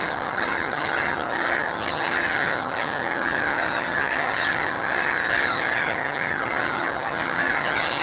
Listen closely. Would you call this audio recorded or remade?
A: remade